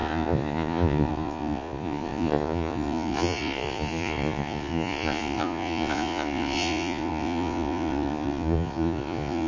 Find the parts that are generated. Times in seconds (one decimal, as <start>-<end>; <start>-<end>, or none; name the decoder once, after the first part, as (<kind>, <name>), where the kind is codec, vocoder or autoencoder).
0.0-9.5 (vocoder, Vocos)